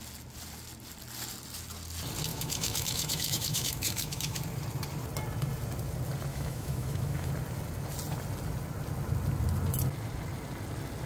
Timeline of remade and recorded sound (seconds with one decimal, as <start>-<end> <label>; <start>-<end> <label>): 0.0-2.3 recorded; 2.3-4.4 remade; 4.4-6.3 recorded; 6.3-7.3 remade; 7.3-11.1 recorded